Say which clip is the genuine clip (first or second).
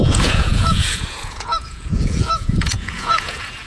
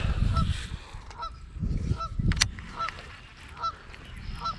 second